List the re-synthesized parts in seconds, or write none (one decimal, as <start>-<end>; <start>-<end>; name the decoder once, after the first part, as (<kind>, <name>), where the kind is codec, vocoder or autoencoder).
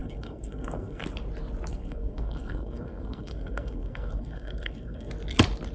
0.0-1.0 (codec, SNAC); 1.7-5.1